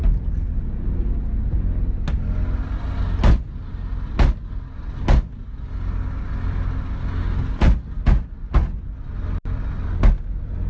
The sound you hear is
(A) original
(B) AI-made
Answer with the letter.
A